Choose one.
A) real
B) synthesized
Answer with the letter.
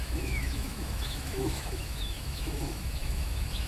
B